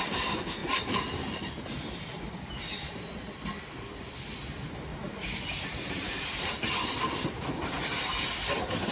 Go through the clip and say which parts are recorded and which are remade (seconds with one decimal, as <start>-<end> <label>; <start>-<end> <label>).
0.0-0.6 recorded; 0.6-1.8 remade; 1.8-4.9 recorded; 4.9-7.1 remade; 7.1-8.9 recorded